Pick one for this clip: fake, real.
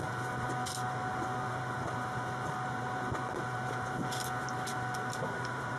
real